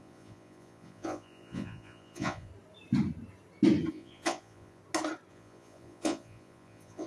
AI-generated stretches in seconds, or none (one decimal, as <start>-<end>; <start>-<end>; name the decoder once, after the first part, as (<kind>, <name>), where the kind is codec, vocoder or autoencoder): 0.0-2.5 (vocoder, Vocos); 3.9-4.8; 5.3-7.1